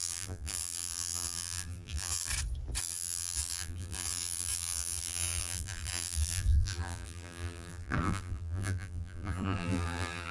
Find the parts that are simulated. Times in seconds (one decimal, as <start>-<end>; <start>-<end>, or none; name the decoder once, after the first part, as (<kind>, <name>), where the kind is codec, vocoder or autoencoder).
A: 0.0-2.3 (vocoder, BigVGAN v2); 2.8-10.3